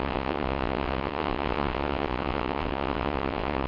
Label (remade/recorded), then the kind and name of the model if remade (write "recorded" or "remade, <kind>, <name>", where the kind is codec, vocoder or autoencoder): remade, vocoder, WaveNeXt